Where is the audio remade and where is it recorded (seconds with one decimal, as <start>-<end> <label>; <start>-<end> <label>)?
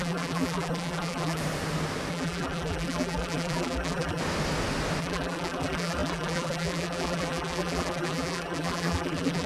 0.0-1.4 remade; 1.4-2.1 recorded; 2.1-4.2 remade; 4.2-5.0 recorded; 5.0-9.5 remade